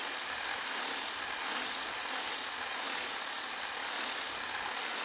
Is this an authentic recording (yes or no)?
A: yes